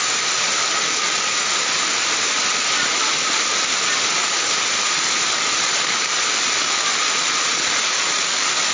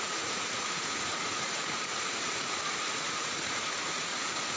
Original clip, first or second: first